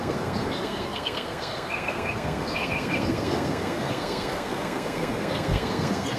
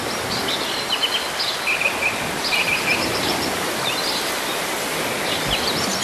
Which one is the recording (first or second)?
second